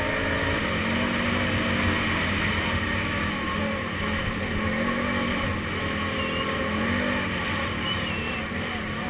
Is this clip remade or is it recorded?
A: recorded